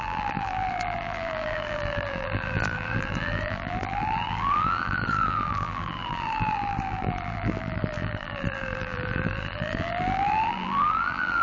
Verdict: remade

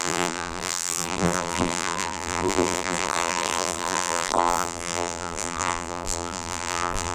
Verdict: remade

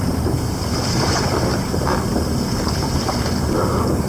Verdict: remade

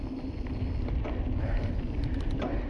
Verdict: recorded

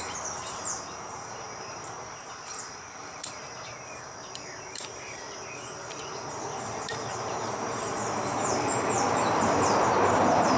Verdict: remade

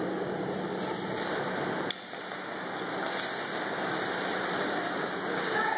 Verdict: recorded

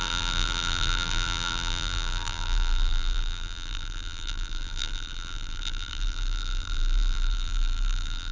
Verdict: remade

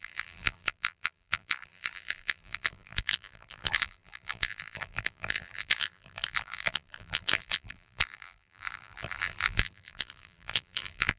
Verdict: remade